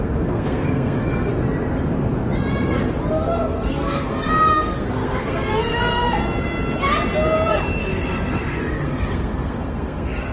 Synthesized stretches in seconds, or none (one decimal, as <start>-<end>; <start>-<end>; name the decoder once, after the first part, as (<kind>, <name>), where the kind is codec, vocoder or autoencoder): 0.0-1.3 (codec, SNAC); 3.1-6.2; 7.8-10.3